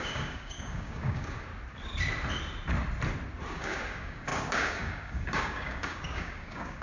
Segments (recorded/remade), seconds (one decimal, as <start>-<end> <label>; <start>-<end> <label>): 0.0-1.5 remade; 1.5-3.5 recorded; 3.5-6.8 remade